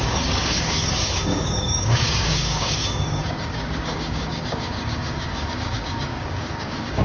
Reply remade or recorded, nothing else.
remade